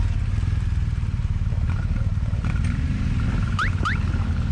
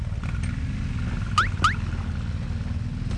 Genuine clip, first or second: second